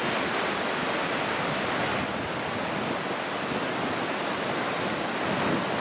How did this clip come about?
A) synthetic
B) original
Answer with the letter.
B